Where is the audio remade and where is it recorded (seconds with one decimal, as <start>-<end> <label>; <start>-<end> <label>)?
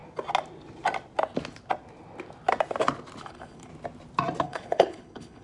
0.0-3.2 recorded; 3.2-3.7 remade; 3.7-4.4 recorded; 4.4-5.4 remade